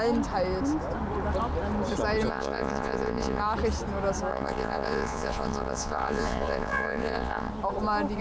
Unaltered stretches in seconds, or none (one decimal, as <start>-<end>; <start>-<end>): 0.0-2.3; 3.4-4.3; 7.5-8.2